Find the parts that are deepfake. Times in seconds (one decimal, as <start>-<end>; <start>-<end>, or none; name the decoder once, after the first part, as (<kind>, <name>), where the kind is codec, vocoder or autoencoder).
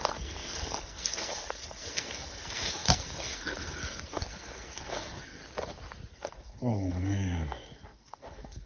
0.0-5.4 (codec, SNAC); 6.1-8.7